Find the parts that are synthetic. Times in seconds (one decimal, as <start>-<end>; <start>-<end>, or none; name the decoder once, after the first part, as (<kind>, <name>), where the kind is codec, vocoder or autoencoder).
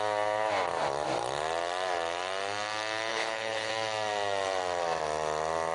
3.1-3.7 (codec, HILCodec)